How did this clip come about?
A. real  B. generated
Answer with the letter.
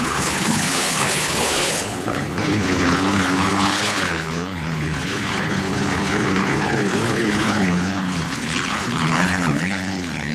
B